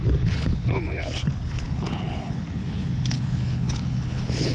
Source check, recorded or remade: remade